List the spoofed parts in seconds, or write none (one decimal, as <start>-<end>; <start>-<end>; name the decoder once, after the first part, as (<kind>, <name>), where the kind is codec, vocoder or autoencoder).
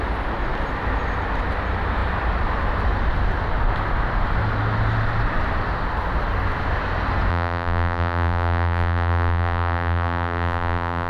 7.3-11.1 (vocoder, BigVGAN v2)